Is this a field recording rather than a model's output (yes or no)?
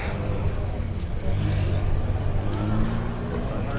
yes